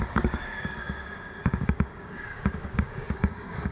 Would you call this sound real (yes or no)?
no